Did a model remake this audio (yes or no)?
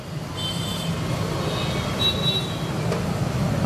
no